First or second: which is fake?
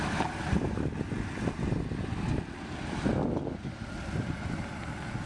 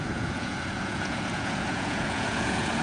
second